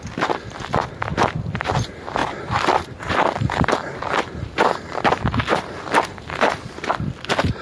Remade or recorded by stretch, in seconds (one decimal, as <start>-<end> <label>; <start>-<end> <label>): 0.0-7.6 remade